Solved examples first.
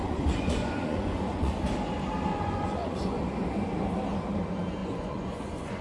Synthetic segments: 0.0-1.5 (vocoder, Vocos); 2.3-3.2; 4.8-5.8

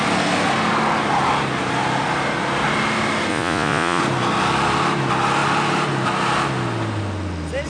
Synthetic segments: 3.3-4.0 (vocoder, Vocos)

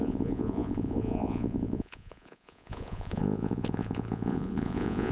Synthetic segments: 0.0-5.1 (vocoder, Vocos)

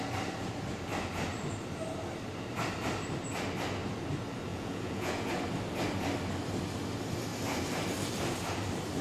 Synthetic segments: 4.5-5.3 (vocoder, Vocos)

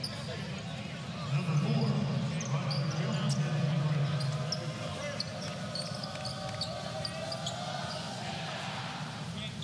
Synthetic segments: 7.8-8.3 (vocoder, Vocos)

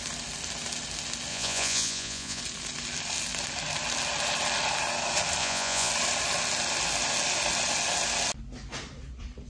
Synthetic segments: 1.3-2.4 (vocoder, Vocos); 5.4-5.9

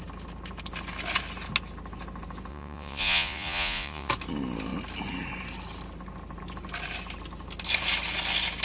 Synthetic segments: 2.5-4.1 (vocoder, Vocos)

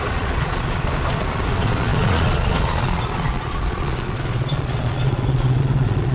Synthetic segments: 0.0-6.1 (vocoder, Vocos)